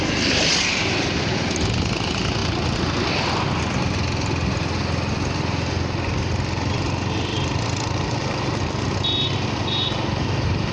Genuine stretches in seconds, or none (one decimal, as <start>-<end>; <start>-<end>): 0.0-2.4; 3.1-7.3